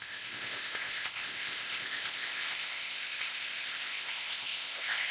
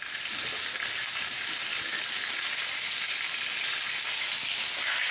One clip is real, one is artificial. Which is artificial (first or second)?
first